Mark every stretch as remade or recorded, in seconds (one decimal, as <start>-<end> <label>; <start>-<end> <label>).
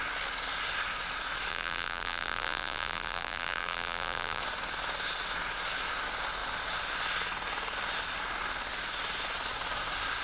0.0-1.5 recorded; 1.5-4.4 remade; 4.4-10.2 recorded